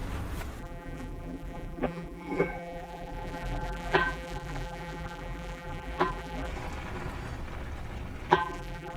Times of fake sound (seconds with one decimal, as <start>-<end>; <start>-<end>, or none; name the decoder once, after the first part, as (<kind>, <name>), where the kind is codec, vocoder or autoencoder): 0.6-6.5 (vocoder, BigVGAN v2); 8.3-9.0